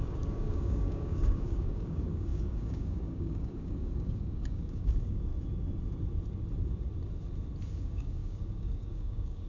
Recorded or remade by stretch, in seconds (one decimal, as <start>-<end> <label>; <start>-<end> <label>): 0.0-5.3 remade; 5.3-7.7 recorded; 7.7-9.5 remade